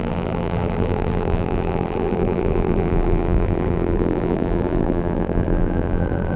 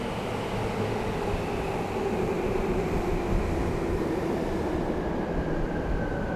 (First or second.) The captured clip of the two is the second